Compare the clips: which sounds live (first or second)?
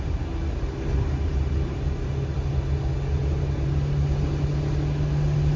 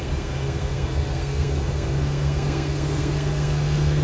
first